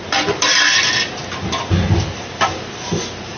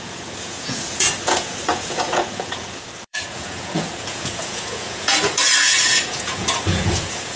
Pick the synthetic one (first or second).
second